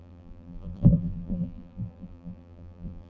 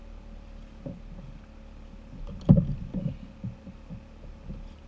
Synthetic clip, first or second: first